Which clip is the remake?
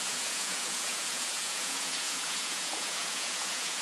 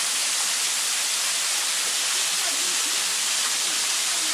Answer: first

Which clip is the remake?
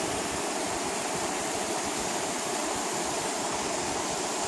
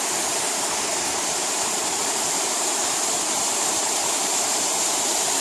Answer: second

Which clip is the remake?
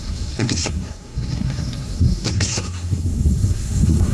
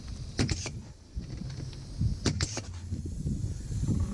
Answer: first